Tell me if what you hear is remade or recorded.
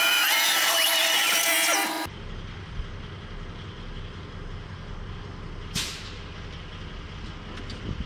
recorded